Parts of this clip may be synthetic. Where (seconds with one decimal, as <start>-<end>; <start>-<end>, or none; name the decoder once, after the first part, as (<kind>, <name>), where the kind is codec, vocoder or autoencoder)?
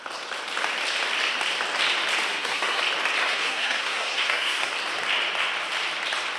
2.3-2.8 (codec, SNAC); 3.2-4.7